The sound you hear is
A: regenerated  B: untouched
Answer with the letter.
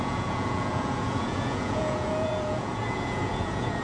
A